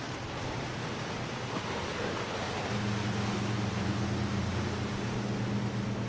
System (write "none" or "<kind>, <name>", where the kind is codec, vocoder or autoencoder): none